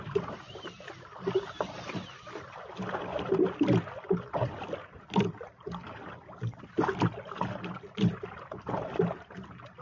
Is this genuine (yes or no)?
yes